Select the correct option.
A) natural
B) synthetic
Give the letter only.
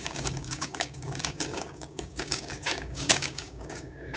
B